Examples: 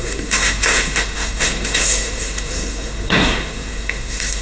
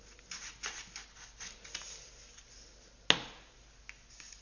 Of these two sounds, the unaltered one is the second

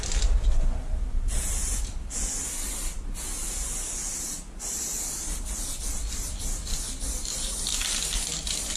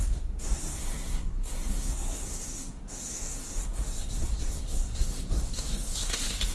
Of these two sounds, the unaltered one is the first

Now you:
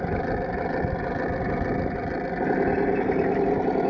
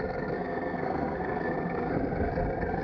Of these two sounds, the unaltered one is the first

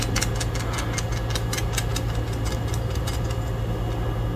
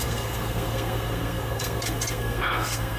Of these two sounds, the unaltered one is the first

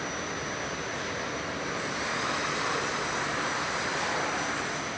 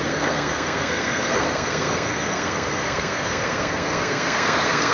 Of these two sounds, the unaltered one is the first